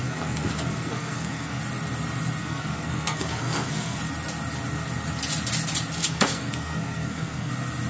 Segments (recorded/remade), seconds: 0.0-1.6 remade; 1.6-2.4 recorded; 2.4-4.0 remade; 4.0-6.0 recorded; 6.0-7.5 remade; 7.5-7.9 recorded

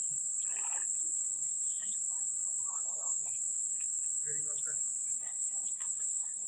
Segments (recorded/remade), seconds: 0.0-1.3 recorded; 1.3-1.9 remade; 1.9-2.7 recorded; 2.7-3.3 remade; 3.3-5.1 recorded; 5.1-6.5 remade